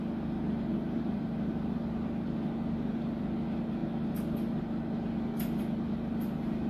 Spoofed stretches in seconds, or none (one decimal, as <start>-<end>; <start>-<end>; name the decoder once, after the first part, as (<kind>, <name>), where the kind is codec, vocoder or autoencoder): 0.7-1.8 (vocoder, BigVGAN v2)